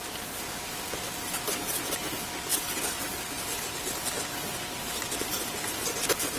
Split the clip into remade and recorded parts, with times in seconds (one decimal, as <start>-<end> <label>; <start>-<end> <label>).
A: 0.0-6.4 recorded